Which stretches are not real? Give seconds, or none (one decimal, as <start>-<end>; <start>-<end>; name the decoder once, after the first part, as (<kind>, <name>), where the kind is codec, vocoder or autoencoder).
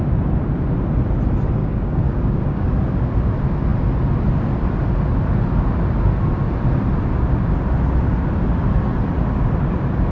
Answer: 1.6-2.7 (codec, DAC)